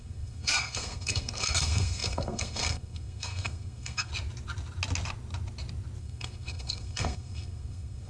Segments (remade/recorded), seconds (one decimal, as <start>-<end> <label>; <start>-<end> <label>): 0.0-4.1 remade; 4.1-6.0 recorded; 6.0-8.1 remade